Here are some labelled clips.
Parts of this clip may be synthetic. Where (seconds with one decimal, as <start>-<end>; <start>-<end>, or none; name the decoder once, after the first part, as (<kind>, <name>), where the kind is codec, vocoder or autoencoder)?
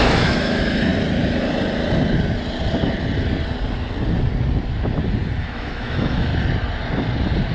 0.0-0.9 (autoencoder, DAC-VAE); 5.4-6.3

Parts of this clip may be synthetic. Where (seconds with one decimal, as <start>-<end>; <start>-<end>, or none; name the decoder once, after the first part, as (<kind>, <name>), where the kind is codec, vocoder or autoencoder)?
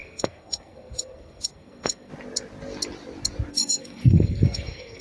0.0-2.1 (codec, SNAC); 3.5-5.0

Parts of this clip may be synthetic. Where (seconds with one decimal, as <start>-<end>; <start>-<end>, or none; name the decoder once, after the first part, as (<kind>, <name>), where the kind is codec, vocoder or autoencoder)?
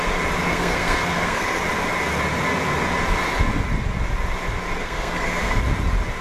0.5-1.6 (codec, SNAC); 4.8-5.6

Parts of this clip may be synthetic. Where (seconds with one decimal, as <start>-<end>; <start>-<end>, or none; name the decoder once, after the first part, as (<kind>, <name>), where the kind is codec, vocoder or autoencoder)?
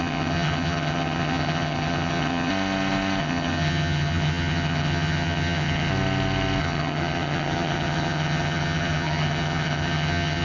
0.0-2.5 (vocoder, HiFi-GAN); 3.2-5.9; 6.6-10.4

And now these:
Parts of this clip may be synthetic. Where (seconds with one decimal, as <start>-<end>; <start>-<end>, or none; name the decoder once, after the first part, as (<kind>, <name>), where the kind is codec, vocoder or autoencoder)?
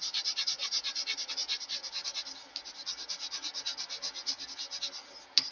0.0-1.8 (vocoder, BigVGAN v2); 5.1-5.5